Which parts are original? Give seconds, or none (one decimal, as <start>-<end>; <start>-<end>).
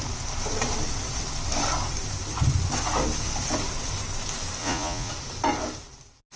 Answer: 0.0-4.6; 5.1-6.4